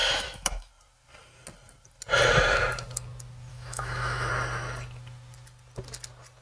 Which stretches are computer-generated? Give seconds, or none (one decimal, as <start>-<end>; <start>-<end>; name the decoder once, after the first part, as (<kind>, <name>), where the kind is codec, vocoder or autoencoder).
0.0-0.7 (autoencoder, DAC-VAE); 3.5-4.3